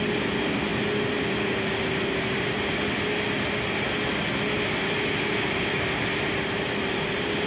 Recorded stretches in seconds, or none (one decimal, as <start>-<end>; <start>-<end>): 0.0-7.5